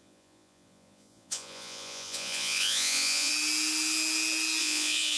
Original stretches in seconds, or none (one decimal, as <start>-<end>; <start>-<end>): 3.3-4.6